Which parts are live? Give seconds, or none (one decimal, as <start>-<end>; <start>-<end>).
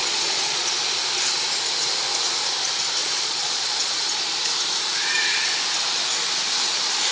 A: 0.7-3.0; 3.9-7.1